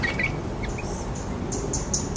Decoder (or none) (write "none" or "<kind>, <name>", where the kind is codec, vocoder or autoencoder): none